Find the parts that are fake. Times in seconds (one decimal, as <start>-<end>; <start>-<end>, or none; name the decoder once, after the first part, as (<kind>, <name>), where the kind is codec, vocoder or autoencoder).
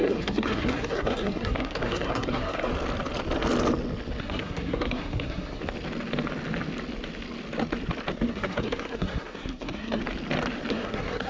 0.0-2.7 (codec, SNAC); 4.2-5.6; 8.3-10.0; 10.7-11.3